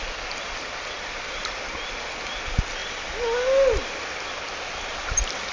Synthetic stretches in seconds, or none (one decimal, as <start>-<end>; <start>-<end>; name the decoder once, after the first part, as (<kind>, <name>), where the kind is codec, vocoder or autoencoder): none